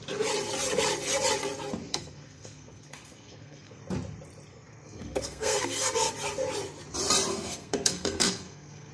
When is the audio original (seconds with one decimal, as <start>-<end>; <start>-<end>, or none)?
0.0-1.9; 3.8-4.5; 6.1-7.3